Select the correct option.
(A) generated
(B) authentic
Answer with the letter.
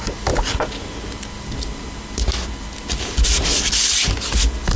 B